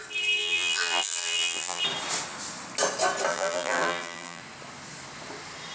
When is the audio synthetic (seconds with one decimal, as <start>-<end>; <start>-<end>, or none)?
0.4-1.8; 3.3-4.4